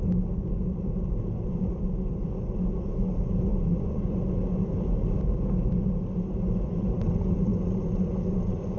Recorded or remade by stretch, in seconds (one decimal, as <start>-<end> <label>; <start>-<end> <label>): 0.0-3.5 recorded; 3.5-4.1 remade; 4.1-8.8 recorded